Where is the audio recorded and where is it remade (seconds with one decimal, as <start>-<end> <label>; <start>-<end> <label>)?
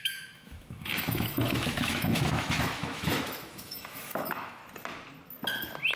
0.0-4.6 remade; 4.6-6.0 recorded